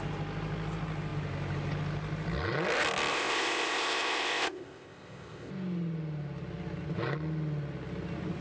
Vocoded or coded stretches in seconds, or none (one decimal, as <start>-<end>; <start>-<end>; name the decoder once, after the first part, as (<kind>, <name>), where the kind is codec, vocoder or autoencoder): 3.1-5.5 (codec, ZipCodec)